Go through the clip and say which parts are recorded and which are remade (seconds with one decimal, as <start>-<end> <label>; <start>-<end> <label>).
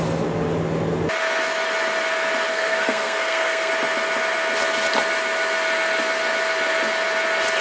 0.0-2.5 recorded; 2.5-3.7 remade; 3.7-7.6 recorded